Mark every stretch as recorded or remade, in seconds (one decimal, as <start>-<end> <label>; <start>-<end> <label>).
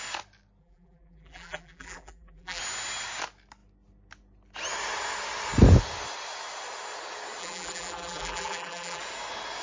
0.0-0.6 recorded; 0.6-2.6 remade; 2.6-7.4 recorded; 7.4-9.0 remade; 9.0-9.6 recorded